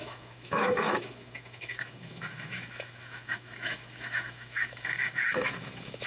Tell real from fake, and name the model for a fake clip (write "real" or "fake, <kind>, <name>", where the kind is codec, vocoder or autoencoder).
fake, autoencoder, DAC-VAE